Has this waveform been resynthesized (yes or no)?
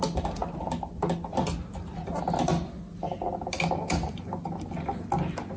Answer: no